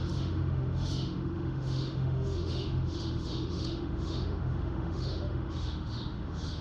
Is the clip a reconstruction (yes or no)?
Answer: yes